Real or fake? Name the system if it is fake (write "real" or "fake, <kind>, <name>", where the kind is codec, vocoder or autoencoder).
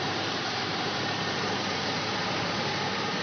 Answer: fake, vocoder, BigVGAN v2